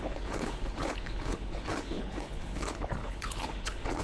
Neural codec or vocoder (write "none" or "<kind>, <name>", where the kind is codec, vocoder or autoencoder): codec, HILCodec